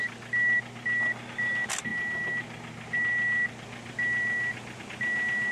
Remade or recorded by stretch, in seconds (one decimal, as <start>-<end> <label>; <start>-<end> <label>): 0.0-5.5 recorded